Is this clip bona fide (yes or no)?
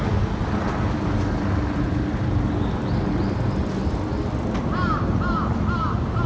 yes